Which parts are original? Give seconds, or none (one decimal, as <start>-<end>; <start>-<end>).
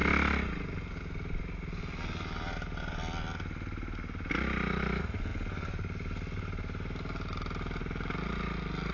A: 0.0-8.9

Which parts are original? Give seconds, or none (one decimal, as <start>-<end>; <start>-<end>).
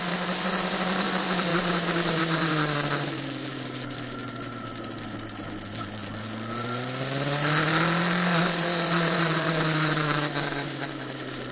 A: 4.2-8.4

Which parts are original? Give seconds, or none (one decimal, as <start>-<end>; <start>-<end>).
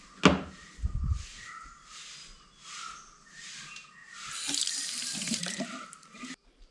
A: 0.0-4.0